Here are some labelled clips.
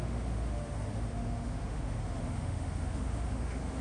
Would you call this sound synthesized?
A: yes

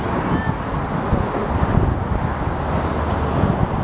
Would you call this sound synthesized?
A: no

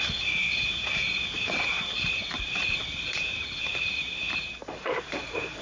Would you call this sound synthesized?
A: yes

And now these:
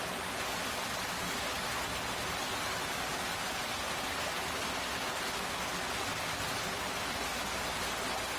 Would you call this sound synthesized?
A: no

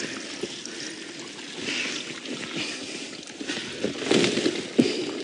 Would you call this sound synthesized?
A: no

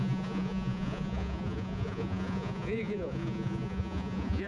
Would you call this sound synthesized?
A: yes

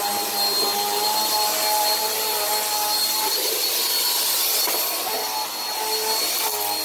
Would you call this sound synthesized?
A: no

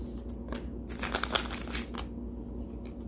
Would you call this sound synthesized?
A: no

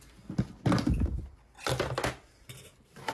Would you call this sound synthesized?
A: no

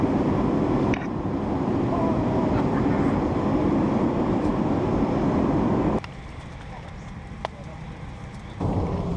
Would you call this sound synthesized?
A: yes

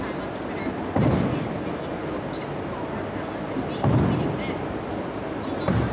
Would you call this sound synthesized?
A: no